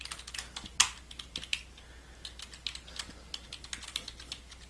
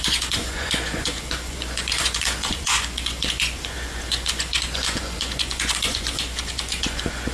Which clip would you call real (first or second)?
first